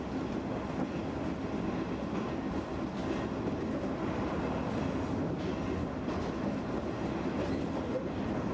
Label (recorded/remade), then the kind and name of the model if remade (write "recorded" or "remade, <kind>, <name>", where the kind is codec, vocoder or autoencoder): recorded